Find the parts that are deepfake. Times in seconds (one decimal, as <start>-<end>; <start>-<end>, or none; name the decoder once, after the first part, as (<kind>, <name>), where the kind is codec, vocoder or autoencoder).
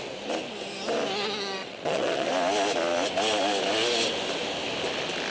1.6-2.3 (vocoder, WaveNeXt)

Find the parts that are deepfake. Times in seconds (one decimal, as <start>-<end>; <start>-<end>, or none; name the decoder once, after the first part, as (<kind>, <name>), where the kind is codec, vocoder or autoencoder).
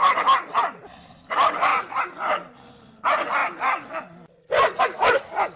none